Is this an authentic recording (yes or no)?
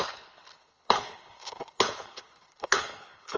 no